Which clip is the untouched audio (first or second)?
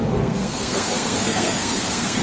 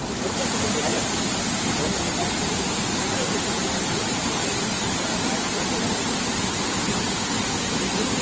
second